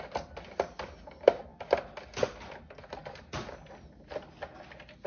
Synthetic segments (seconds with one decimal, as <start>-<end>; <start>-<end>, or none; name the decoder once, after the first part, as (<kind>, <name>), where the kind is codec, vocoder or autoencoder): none